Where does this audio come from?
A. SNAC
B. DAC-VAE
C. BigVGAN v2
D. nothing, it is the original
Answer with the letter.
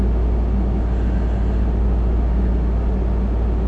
D